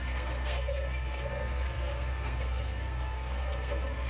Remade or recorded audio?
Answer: remade